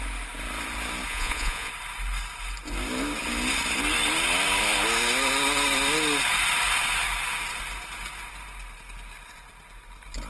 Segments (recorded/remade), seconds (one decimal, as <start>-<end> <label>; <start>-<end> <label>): 0.0-1.1 recorded; 1.1-1.7 remade; 1.7-10.3 recorded